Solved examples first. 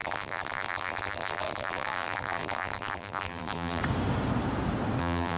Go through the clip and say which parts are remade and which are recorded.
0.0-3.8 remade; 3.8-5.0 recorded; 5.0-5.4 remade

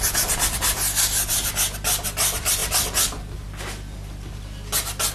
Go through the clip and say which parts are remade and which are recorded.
0.0-5.1 recorded